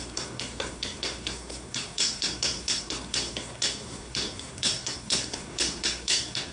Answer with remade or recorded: remade